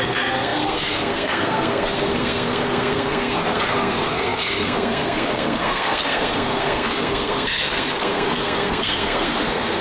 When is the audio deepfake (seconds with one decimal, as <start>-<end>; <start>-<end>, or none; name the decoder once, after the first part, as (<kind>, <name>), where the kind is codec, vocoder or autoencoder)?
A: 0.0-9.8 (codec, SNAC)

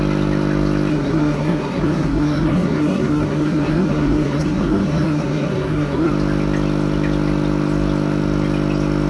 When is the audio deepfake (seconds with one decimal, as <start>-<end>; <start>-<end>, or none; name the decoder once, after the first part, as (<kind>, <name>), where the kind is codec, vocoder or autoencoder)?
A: 0.9-6.1 (codec, SNAC)

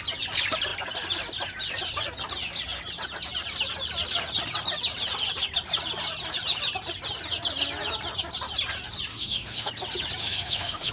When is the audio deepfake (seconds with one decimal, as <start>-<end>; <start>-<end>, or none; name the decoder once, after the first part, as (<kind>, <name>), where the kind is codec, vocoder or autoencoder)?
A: 9.1-9.7 (autoencoder, DAC-VAE); 10.2-10.9

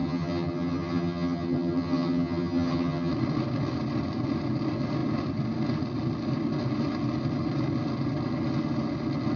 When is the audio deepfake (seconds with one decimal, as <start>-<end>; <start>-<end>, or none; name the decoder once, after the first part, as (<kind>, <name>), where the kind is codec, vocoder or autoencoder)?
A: 0.0-3.1 (vocoder, HiFi-GAN)